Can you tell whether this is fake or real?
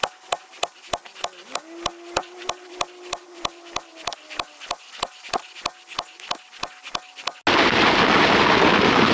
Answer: real